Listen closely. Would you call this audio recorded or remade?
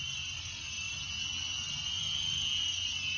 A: recorded